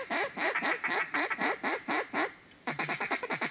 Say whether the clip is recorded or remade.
remade